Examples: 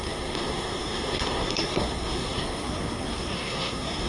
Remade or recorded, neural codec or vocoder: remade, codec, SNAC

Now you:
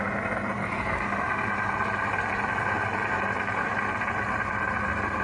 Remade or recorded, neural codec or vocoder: recorded